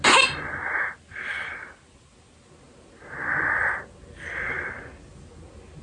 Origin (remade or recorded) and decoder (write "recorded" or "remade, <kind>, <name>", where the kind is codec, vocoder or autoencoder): recorded